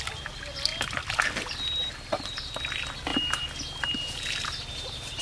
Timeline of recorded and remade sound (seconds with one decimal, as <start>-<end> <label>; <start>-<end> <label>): 0.0-5.2 recorded